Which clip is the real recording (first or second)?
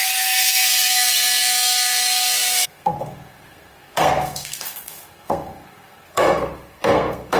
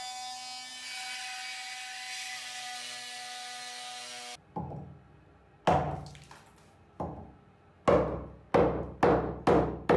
second